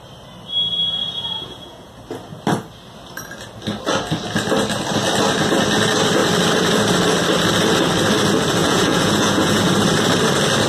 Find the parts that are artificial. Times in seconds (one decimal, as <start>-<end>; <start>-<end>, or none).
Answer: 1.0-1.9; 8.6-9.6